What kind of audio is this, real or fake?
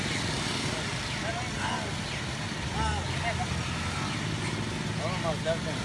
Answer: real